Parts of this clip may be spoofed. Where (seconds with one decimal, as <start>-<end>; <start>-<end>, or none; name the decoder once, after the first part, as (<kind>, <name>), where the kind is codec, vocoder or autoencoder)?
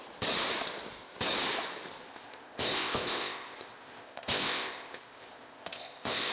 2.1-6.3 (codec, ZipCodec)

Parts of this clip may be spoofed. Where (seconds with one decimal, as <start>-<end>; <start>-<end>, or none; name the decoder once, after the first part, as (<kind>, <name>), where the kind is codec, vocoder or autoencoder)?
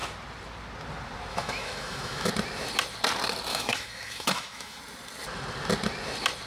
1.3-2.3 (autoencoder, DAC-VAE); 3.5-4.8